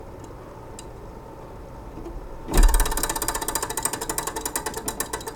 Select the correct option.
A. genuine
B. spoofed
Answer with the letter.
A